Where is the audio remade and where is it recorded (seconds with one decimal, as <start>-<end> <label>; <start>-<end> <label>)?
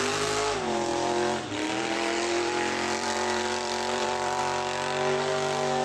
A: 0.0-0.9 recorded; 0.9-4.4 remade; 4.4-5.8 recorded